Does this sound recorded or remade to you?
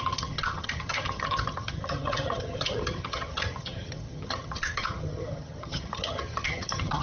remade